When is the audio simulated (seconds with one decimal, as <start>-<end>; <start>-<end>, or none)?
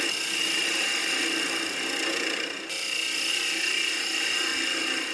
0.0-1.0; 3.3-5.1